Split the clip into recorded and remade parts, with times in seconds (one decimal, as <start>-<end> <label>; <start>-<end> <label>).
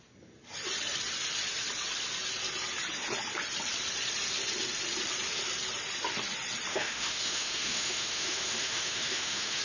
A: 0.0-6.7 recorded; 6.7-9.6 remade